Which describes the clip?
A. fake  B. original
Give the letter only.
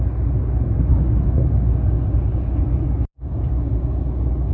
B